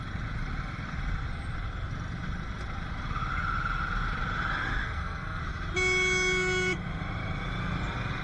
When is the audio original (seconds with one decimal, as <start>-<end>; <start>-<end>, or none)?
0.0-4.8; 5.4-8.2